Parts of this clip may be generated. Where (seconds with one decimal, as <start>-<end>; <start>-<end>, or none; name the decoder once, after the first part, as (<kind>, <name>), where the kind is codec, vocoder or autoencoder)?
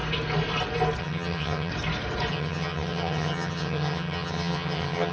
1.0-1.7 (vocoder, HiFi-GAN); 2.3-5.1